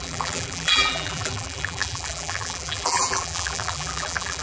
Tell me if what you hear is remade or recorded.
remade